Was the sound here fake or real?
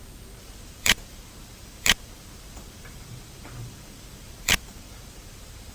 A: fake